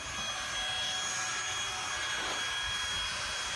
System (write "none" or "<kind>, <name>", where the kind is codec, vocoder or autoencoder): none